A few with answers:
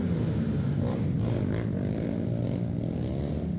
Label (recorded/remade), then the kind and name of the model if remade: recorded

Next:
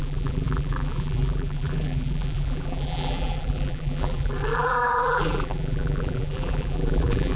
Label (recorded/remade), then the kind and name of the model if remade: remade, vocoder, BigVGAN v2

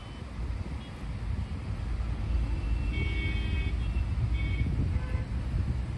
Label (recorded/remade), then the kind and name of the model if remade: recorded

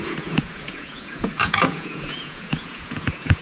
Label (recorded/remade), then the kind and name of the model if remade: remade, vocoder, Vocos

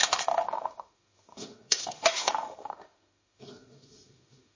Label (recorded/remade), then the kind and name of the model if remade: remade, autoencoder, DAC-VAE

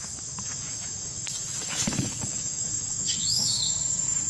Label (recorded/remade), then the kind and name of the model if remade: remade, autoencoder, DAC-VAE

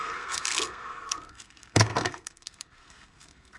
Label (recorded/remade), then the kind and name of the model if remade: remade, codec, SNAC